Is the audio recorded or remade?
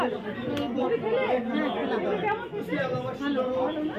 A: recorded